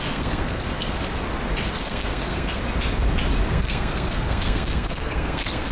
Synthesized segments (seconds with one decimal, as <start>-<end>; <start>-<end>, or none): 0.0-1.0; 1.7-2.6; 3.5-5.7